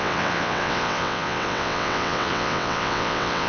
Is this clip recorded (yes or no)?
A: no